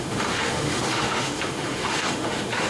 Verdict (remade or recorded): remade